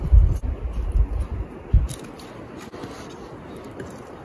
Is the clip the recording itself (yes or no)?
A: yes